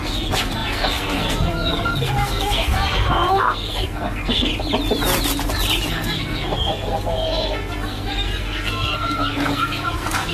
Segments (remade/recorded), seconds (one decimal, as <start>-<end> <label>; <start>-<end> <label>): 0.0-4.5 remade; 4.5-5.9 recorded; 5.9-10.3 remade